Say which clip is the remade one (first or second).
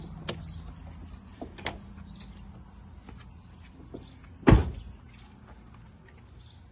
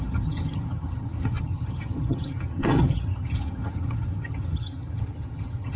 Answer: second